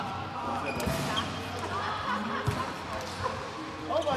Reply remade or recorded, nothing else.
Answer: recorded